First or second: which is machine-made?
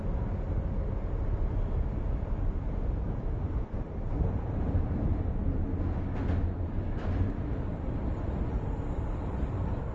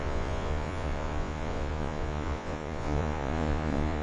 second